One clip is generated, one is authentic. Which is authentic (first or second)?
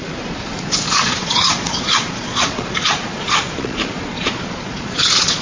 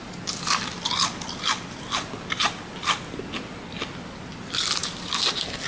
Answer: second